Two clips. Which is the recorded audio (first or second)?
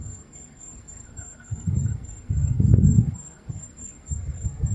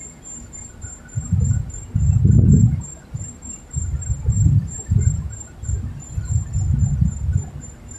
second